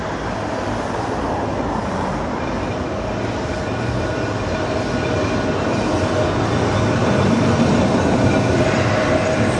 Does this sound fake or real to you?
real